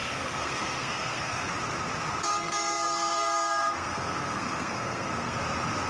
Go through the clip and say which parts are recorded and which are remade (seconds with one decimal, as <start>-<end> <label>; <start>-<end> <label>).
0.0-1.5 remade; 1.5-2.3 recorded; 2.3-5.4 remade; 5.4-5.9 recorded